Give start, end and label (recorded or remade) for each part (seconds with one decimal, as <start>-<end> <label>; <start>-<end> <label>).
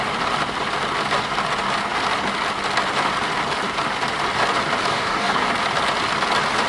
0.0-4.9 recorded; 4.9-5.5 remade; 5.5-6.7 recorded